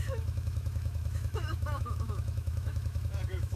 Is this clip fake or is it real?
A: fake